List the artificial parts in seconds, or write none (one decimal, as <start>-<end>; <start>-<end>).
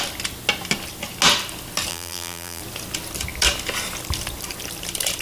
1.9-2.6